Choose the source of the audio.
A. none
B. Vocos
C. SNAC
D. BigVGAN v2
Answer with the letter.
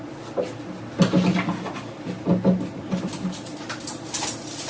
A